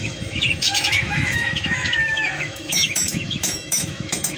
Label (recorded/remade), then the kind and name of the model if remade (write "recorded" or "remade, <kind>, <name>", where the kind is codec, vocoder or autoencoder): remade, autoencoder, DAC-VAE